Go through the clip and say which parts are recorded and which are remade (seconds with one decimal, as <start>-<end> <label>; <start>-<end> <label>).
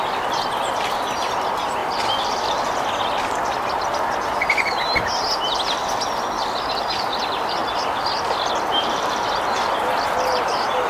0.0-7.6 recorded; 7.6-8.5 remade; 8.5-10.9 recorded